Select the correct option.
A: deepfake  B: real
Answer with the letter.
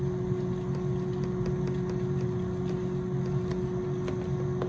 B